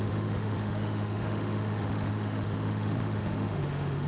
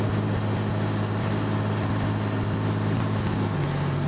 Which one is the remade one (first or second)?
first